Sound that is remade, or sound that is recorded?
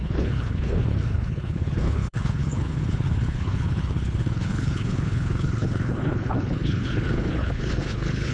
remade